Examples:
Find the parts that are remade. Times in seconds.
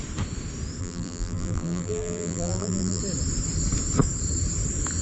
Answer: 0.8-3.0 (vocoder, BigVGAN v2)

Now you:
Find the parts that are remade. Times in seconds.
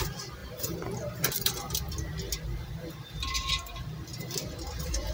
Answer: 0.4-3.5 (vocoder, BigVGAN v2); 4.1-5.1